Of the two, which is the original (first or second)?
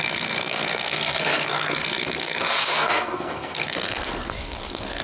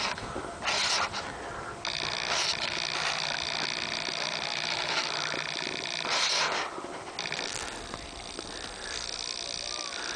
second